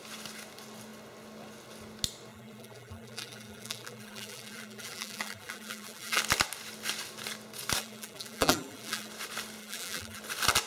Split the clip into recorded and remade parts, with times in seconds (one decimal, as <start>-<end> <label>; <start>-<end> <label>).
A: 0.0-2.3 recorded; 2.3-6.2 remade; 6.2-7.8 recorded; 7.8-9.1 remade; 9.1-9.6 recorded; 9.6-10.2 remade; 10.2-10.7 recorded